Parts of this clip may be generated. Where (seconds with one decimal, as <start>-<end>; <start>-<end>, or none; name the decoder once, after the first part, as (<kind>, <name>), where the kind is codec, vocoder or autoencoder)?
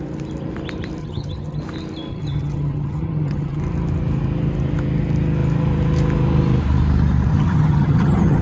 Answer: 1.0-1.6 (vocoder, HiFi-GAN); 2.1-3.6; 7.3-8.4